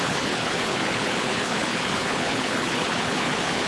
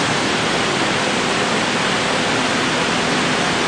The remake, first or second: first